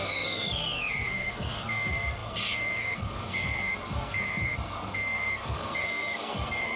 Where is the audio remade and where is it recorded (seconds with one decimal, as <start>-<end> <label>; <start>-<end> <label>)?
0.0-6.8 remade